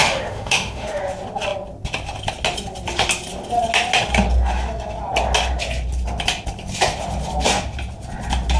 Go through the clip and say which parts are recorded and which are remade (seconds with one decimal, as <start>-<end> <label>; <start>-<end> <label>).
0.0-1.0 remade; 1.0-8.6 recorded